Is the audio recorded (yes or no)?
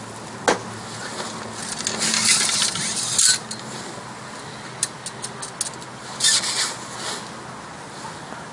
yes